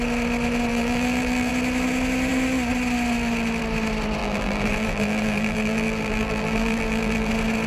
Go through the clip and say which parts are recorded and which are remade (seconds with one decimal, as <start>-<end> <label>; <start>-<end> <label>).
0.0-0.7 recorded; 0.7-1.5 remade; 1.5-4.2 recorded; 4.2-7.3 remade; 7.3-7.7 recorded